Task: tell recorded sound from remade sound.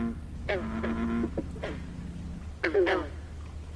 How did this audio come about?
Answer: recorded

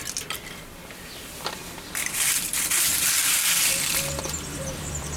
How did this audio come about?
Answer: remade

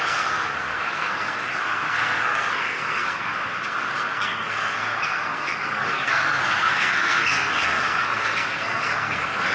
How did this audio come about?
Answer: remade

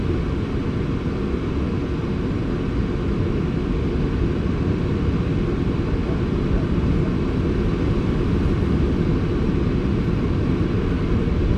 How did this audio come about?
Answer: recorded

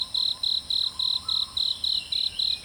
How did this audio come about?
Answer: remade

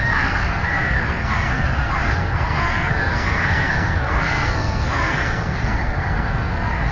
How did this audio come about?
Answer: remade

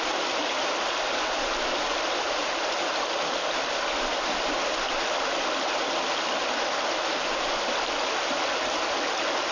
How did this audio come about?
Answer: recorded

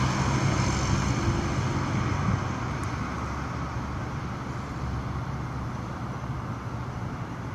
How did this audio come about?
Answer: recorded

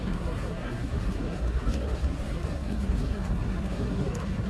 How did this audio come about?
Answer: remade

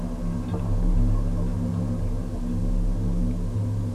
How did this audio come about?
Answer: recorded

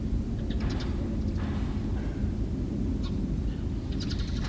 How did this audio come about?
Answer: recorded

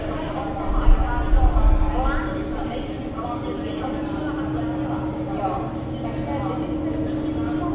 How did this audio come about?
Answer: recorded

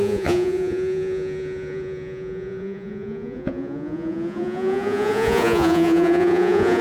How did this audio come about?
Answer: remade